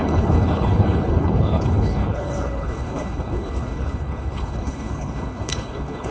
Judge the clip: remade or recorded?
remade